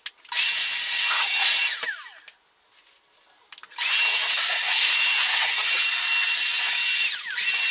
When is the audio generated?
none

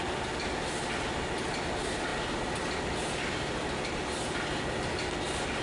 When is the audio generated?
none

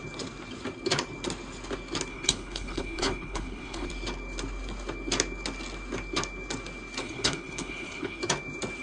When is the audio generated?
2.1-3.9 (codec, HILCodec); 7.0-8.2

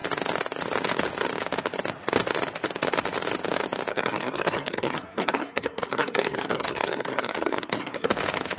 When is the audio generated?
3.9-8.1 (codec, SNAC)

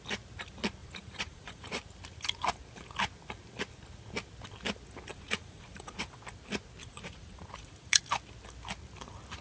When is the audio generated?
0.8-1.8 (vocoder, Vocos); 5.1-6.2; 6.8-8.0

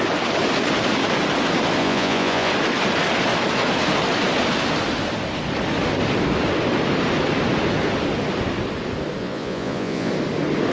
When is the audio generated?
1.8-2.5 (vocoder, Vocos); 9.2-10.1

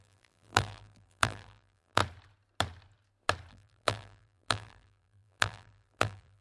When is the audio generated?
0.0-2.0 (vocoder, BigVGAN v2); 3.5-6.4

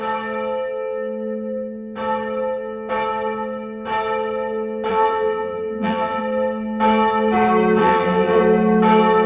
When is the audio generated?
4.9-6.2 (vocoder, BigVGAN v2); 7.8-8.4